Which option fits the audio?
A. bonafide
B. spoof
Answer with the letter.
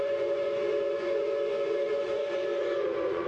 B